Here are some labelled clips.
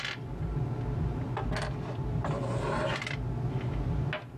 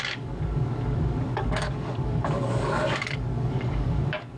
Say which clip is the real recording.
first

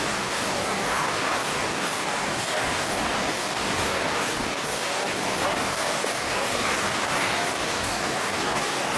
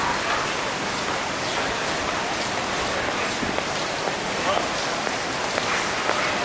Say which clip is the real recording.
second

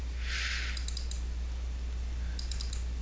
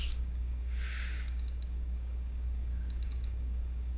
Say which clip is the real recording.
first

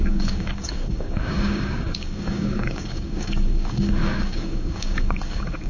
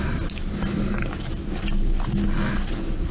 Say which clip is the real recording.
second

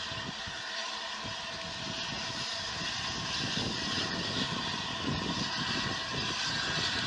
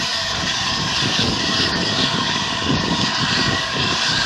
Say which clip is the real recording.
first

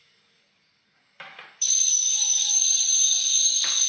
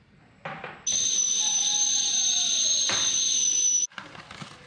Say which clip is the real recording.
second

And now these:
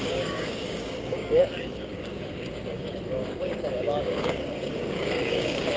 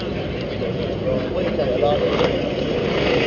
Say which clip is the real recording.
second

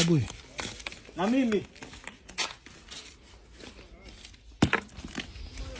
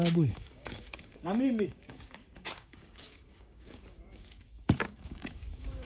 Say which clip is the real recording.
first